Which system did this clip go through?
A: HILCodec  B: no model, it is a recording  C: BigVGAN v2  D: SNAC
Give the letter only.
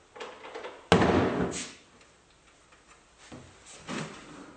B